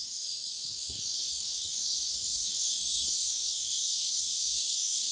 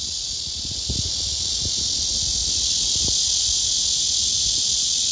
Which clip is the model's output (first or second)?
first